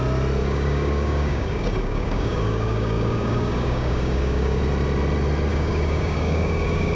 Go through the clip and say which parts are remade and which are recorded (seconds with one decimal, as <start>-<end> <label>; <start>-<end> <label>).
0.0-0.4 recorded; 0.4-4.6 remade; 4.6-5.5 recorded; 5.5-7.0 remade